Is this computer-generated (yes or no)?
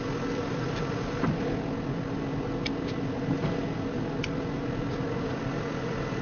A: no